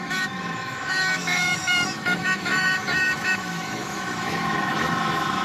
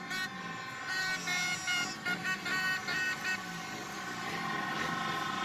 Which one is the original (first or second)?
second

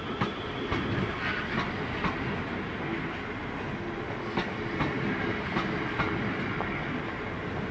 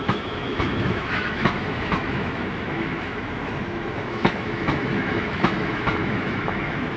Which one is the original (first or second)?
first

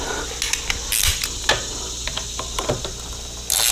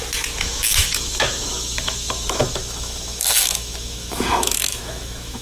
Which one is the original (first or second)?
first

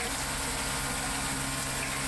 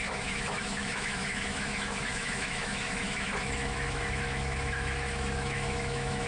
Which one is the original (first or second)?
first